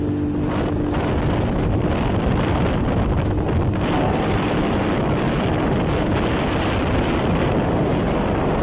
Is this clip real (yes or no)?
yes